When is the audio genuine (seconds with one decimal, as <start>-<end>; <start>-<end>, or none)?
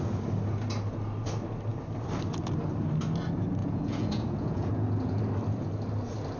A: 0.0-3.6; 5.2-6.4